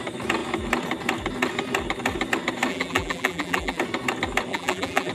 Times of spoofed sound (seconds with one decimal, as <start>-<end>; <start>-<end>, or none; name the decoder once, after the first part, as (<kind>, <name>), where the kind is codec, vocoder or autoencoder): 2.7-3.8 (vocoder, BigVGAN v2); 4.5-5.1